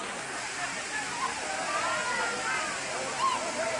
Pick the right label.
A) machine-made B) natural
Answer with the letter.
B